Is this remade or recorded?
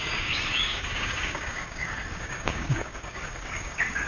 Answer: remade